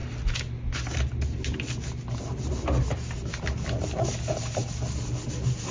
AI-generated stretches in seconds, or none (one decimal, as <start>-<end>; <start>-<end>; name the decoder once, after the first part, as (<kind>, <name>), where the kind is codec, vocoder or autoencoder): none